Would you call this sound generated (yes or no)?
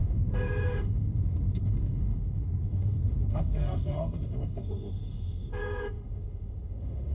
yes